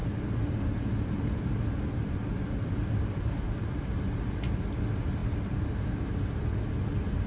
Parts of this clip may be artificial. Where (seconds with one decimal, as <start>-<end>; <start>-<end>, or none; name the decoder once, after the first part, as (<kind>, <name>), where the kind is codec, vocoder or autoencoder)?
none